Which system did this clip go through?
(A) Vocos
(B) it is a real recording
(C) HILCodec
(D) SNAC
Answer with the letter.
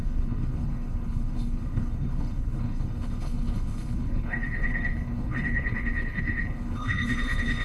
C